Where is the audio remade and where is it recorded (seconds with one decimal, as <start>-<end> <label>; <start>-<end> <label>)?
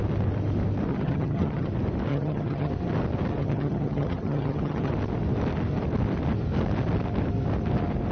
0.0-0.9 recorded; 0.9-1.7 remade; 1.7-2.1 recorded; 2.1-2.7 remade; 2.7-3.4 recorded; 3.4-4.9 remade; 4.9-8.1 recorded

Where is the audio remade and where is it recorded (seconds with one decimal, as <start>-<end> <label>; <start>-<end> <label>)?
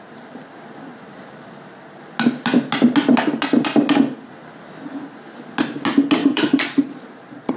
0.0-6.2 recorded; 6.2-7.6 remade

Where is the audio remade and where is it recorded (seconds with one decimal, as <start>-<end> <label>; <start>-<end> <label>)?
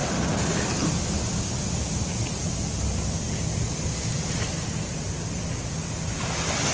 0.0-6.7 recorded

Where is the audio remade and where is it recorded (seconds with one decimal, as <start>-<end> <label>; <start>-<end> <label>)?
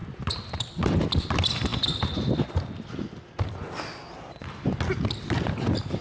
0.0-0.8 remade; 0.8-6.0 recorded